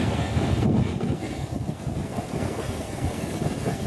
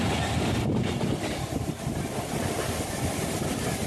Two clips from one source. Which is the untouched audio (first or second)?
second